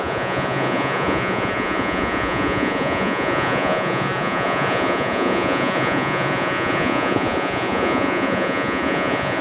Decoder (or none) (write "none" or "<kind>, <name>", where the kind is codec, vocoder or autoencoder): vocoder, Vocos